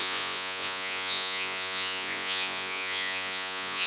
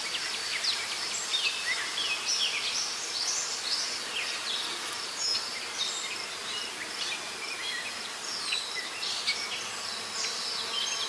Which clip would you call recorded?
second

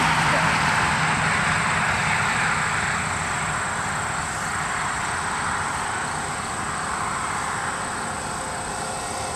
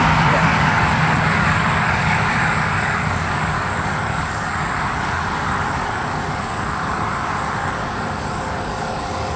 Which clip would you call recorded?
first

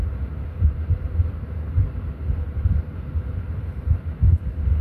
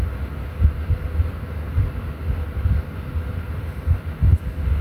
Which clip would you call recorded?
second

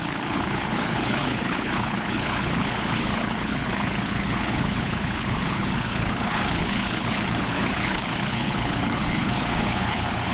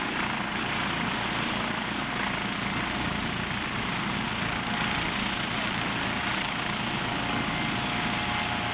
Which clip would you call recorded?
second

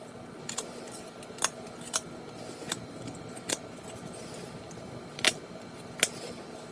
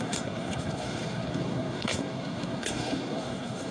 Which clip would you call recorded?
first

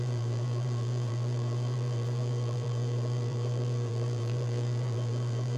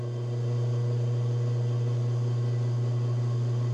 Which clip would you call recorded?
second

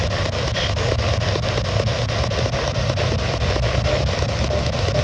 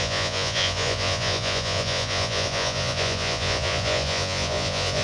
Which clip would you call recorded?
first